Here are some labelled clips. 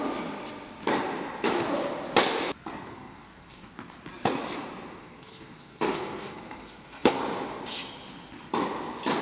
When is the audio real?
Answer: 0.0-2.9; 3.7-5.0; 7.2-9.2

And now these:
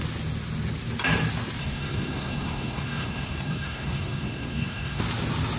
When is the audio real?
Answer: 0.0-1.6; 5.0-5.6

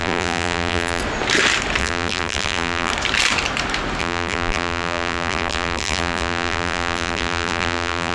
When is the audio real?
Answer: 1.0-1.8; 2.9-4.0